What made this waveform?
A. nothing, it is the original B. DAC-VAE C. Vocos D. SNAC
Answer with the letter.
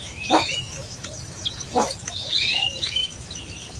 B